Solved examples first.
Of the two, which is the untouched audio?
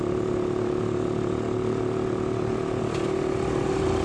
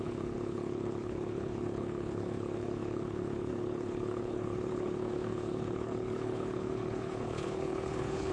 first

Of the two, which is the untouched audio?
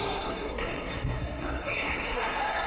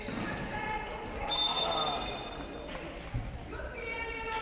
second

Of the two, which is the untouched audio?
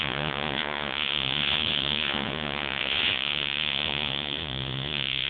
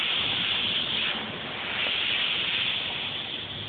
second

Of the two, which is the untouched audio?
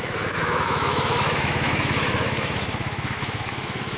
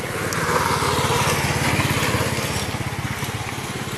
second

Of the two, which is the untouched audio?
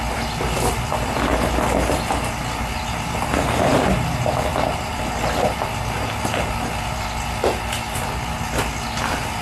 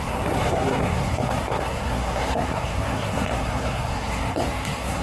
first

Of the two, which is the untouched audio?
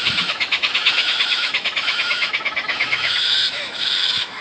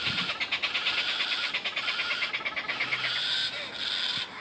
second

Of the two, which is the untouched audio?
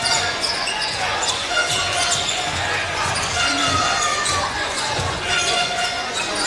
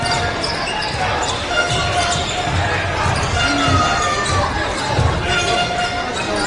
second